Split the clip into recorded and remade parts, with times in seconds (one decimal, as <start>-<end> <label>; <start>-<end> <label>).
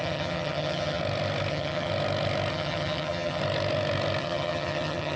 0.0-1.0 remade; 1.0-1.5 recorded; 1.5-1.9 remade; 1.9-2.5 recorded; 2.5-3.4 remade; 3.4-4.2 recorded; 4.2-5.2 remade